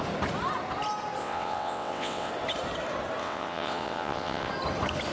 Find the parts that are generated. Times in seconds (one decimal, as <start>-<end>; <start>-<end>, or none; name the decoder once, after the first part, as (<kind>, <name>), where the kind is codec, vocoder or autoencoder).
1.2-2.3 (vocoder, WaveNeXt); 3.2-4.5